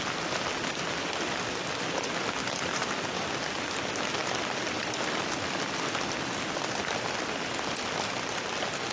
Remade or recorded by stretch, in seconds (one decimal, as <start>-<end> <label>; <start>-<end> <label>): 0.0-8.9 recorded